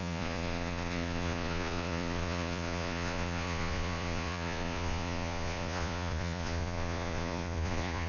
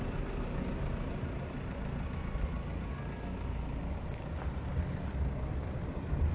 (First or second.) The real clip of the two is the second